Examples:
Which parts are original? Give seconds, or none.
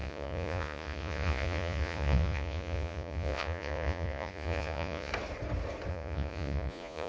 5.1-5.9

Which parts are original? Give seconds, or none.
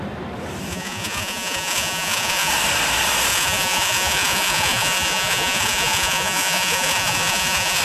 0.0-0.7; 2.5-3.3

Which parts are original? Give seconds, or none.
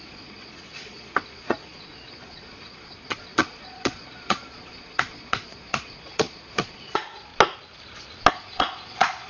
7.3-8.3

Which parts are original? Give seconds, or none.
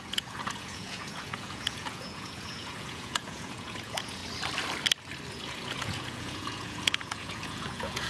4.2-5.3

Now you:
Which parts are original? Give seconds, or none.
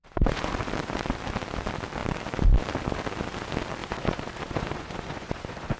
0.5-3.8